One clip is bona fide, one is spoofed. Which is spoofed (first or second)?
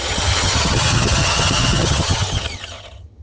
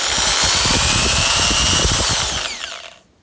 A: first